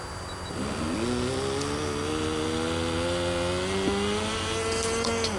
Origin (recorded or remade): recorded